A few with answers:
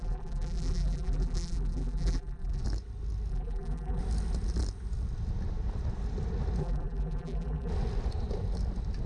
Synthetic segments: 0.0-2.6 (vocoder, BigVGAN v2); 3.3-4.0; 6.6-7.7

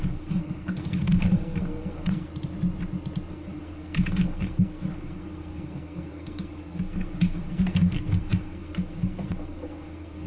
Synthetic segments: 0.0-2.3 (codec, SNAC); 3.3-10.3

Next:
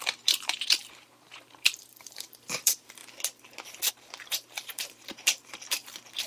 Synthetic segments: 0.0-3.0 (vocoder, BigVGAN v2); 3.9-6.3